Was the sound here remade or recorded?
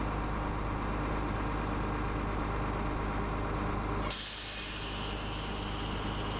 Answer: recorded